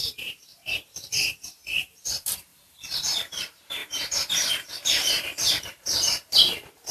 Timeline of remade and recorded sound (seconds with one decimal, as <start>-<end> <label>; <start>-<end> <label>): 0.0-0.5 remade; 0.5-2.0 recorded; 2.0-6.9 remade